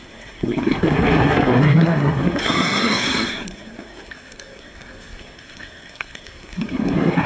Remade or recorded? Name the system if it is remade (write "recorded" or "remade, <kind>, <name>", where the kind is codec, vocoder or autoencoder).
remade, codec, SNAC